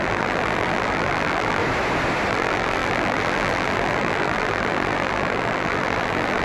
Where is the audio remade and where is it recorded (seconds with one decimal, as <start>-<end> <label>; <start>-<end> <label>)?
0.0-1.6 remade; 1.6-2.3 recorded; 2.3-6.4 remade